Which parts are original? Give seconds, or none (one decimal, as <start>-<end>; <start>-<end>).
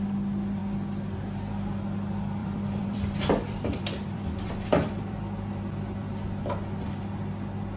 0.0-2.4; 6.1-7.8